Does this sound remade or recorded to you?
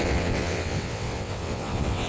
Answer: remade